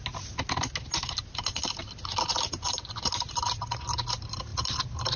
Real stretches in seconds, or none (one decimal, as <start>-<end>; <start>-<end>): 0.0-5.2

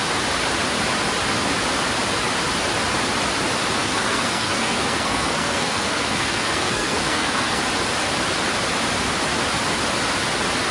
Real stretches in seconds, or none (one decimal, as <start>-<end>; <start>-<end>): 0.0-3.8; 7.6-10.7

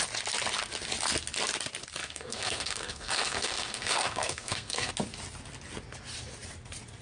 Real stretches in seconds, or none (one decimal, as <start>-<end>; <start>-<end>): 0.0-2.0; 4.9-7.0

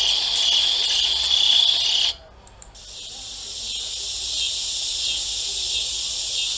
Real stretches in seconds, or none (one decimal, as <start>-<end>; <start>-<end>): 0.0-6.6

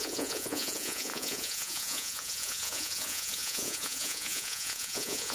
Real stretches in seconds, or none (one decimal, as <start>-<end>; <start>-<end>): none

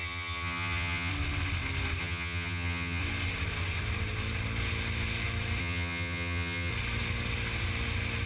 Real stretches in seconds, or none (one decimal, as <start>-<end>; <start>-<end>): 1.1-2.0; 3.0-5.6; 6.7-8.3

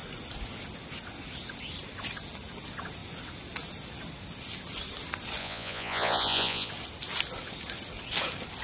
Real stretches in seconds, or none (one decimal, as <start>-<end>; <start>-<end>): 0.0-5.4; 6.7-8.6

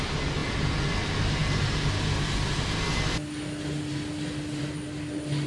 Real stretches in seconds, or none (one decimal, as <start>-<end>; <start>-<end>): 0.0-5.5